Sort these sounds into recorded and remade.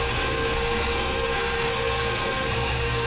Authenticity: remade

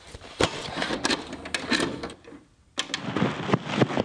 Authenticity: recorded